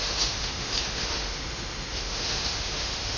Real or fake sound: fake